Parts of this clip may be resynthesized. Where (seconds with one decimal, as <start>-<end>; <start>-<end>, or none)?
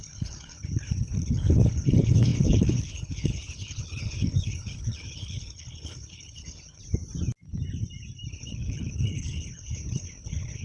0.0-6.8; 8.3-10.6